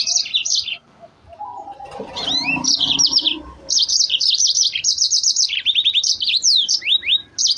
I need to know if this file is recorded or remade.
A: remade